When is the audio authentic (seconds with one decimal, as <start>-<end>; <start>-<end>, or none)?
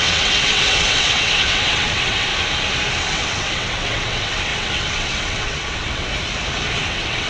2.3-3.1; 6.1-6.7